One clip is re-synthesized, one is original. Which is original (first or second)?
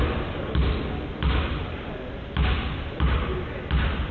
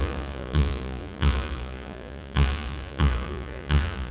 first